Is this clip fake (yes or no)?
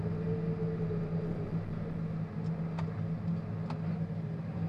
no